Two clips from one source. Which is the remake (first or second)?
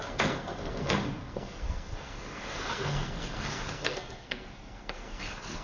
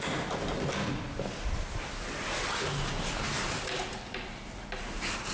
first